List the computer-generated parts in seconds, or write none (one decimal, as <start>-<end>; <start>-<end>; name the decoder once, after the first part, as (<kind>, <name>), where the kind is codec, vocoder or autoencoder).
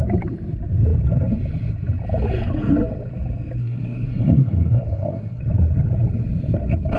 3.6-5.4 (codec, SNAC)